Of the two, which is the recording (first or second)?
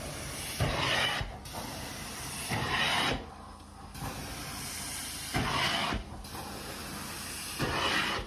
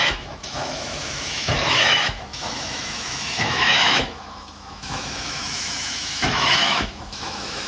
first